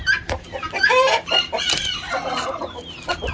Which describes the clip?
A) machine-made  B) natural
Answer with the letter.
B